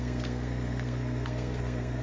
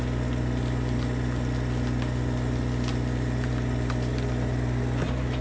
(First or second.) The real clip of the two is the second